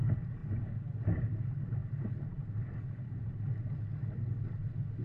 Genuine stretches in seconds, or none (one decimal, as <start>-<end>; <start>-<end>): 0.0-5.0